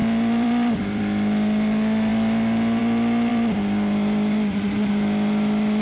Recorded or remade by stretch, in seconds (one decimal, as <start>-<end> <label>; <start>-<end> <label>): 0.0-1.0 remade; 1.0-3.3 recorded; 3.3-4.9 remade; 4.9-5.8 recorded